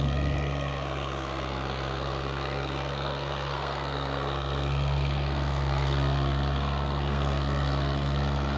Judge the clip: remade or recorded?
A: remade